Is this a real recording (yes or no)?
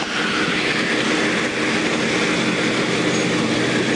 yes